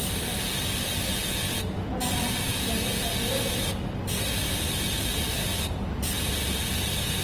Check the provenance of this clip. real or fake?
real